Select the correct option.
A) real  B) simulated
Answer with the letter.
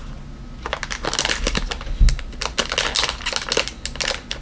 A